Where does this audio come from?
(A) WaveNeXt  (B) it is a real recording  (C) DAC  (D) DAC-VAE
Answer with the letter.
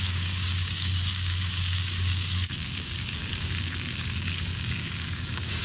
C